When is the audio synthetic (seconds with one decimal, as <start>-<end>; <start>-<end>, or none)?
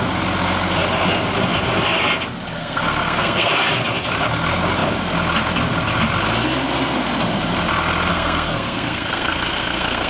2.6-3.5; 8.1-10.1